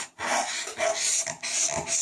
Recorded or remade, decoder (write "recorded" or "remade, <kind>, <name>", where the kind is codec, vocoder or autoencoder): recorded